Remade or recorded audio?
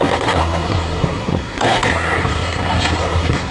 remade